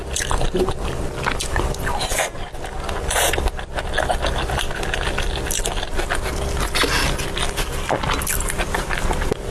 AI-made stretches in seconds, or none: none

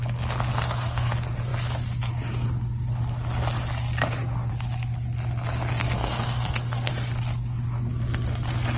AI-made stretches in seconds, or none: 0.5-1.1 (codec, SNAC); 5.8-6.9